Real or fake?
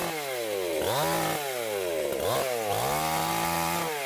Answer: real